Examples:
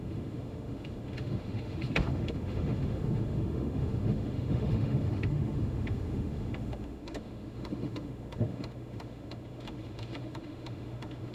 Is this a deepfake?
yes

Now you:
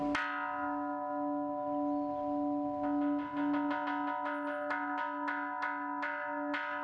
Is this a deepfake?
no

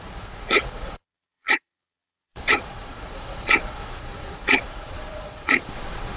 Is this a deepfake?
yes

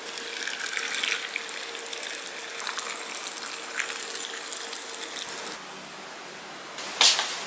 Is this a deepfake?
no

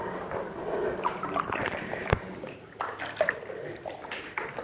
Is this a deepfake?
no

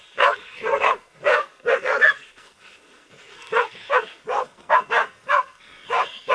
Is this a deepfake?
yes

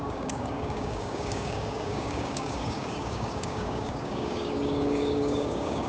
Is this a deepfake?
yes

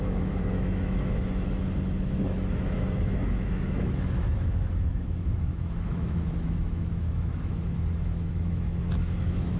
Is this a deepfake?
yes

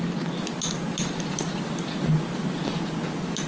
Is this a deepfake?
no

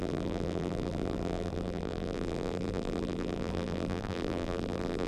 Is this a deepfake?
yes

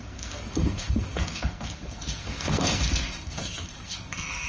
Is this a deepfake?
yes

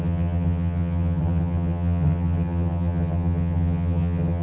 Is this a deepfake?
yes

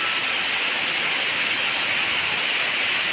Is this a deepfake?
no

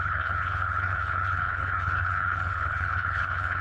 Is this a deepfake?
yes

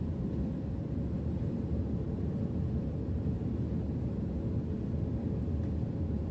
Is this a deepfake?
no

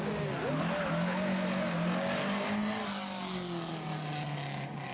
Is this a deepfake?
no